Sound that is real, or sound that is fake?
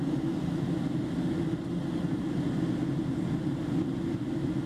real